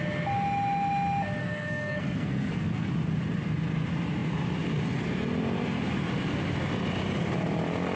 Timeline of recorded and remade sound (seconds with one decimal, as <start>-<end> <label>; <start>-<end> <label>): 0.0-1.4 recorded; 1.4-2.9 remade; 2.9-8.0 recorded